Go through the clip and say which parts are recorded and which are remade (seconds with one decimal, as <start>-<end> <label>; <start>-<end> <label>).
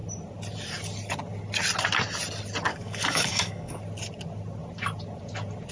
0.0-2.7 recorded; 2.7-3.8 remade; 3.8-5.7 recorded